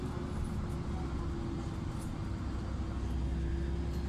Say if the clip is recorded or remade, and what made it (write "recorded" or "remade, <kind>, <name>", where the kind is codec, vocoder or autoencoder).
recorded